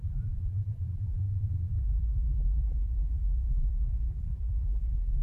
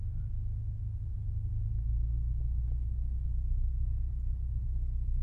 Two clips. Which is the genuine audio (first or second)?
second